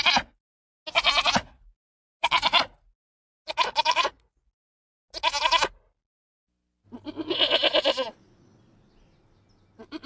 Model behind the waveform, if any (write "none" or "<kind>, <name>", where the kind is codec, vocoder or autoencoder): none